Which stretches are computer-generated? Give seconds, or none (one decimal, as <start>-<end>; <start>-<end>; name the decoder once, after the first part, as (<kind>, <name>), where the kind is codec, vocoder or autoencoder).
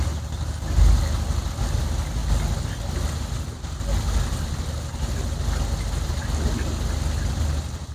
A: none